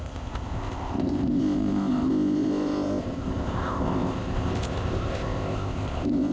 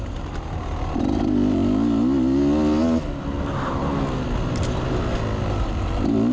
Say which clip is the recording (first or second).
second